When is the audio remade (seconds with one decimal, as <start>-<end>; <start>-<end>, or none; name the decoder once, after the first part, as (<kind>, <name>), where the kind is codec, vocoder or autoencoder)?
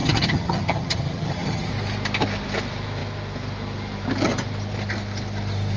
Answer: 0.0-1.7 (vocoder, HiFi-GAN)